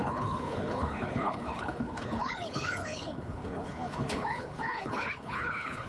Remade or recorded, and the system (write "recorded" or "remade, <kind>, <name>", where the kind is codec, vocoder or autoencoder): remade, codec, HILCodec